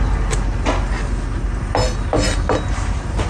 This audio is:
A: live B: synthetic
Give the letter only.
A